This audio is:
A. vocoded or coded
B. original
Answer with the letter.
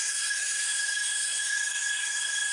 A